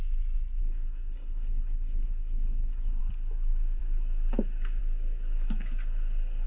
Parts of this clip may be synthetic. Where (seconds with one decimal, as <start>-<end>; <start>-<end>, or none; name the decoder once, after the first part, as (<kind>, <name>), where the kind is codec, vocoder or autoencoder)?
0.6-3.0 (codec, SNAC)